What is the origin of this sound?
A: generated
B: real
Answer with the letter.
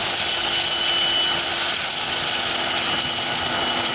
B